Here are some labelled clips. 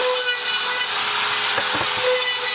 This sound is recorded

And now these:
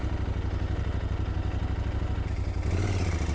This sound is recorded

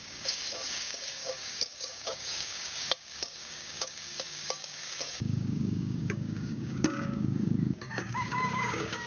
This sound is remade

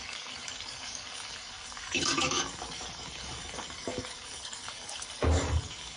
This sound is remade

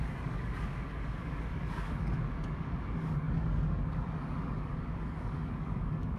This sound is remade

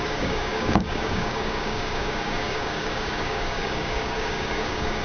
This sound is remade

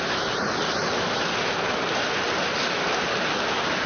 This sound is recorded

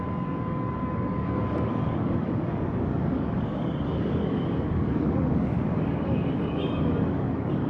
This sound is remade